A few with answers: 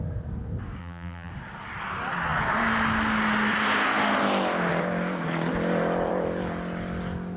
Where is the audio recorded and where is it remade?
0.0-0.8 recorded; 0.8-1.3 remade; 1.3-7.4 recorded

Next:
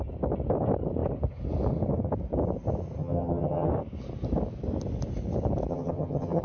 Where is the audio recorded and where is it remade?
0.0-3.0 recorded; 3.0-3.7 remade; 3.7-5.7 recorded; 5.7-6.4 remade

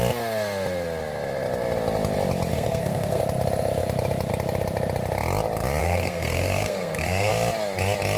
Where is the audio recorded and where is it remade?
0.0-2.5 recorded; 2.5-3.2 remade; 3.2-5.8 recorded; 5.8-7.3 remade; 7.3-8.2 recorded